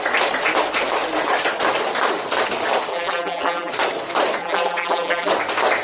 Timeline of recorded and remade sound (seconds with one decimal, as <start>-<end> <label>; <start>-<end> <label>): 0.0-2.9 recorded; 2.9-3.7 remade; 3.7-4.4 recorded; 4.4-5.3 remade; 5.3-5.8 recorded